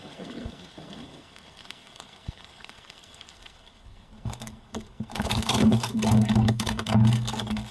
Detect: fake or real fake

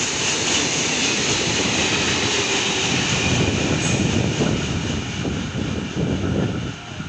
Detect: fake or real real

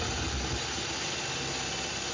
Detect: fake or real real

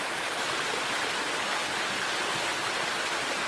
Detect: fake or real real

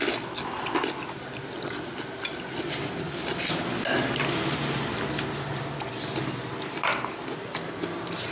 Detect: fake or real real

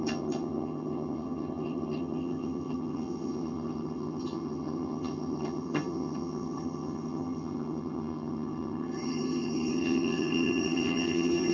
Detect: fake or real fake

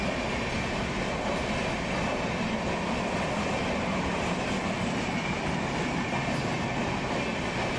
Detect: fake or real real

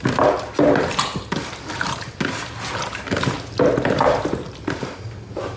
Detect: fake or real real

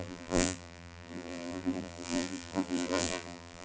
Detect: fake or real fake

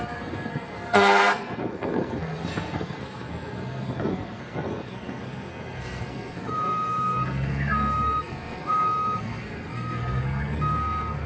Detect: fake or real fake